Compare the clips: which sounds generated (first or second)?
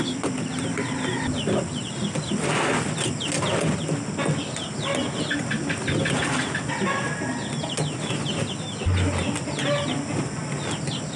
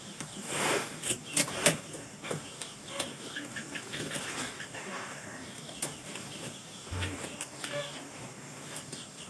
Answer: second